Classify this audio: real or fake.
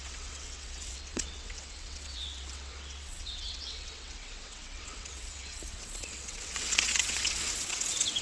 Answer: fake